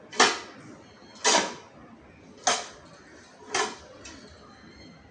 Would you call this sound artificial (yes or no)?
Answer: no